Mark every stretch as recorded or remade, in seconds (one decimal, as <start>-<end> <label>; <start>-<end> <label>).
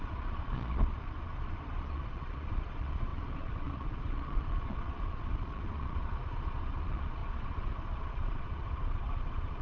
0.0-9.6 remade